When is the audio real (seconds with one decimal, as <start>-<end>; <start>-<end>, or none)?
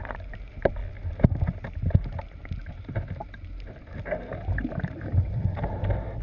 0.8-4.5